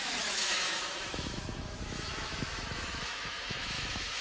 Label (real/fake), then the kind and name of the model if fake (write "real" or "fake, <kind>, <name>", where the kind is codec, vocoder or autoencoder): fake, autoencoder, DAC-VAE